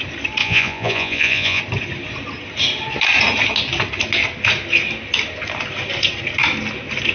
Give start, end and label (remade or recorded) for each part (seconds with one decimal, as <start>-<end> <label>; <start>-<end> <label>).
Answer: 0.0-0.4 recorded; 0.4-1.6 remade; 1.6-7.1 recorded